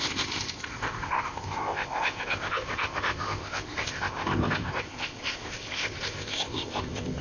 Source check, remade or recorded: remade